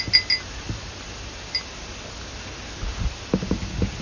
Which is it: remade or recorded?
recorded